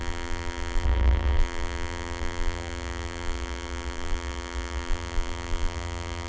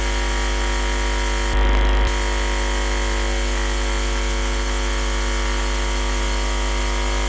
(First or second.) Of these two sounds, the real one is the second